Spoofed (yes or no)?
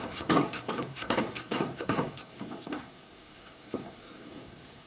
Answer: yes